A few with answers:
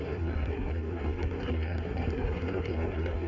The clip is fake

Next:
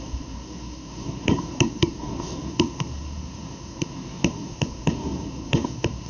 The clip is fake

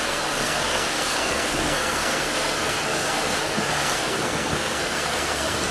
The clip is fake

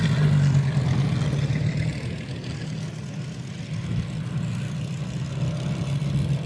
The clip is real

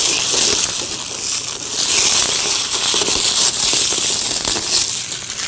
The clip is real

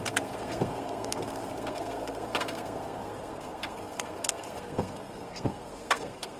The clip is fake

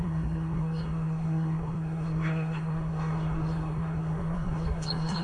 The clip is fake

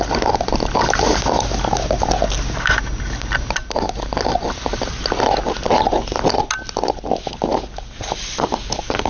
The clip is real